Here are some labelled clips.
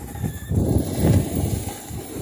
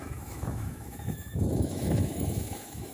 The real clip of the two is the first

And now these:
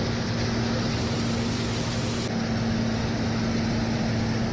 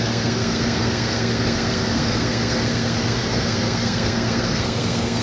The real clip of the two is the first